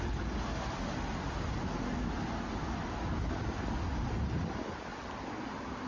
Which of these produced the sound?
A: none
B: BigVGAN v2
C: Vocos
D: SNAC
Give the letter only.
A